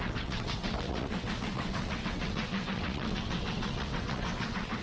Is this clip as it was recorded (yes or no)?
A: no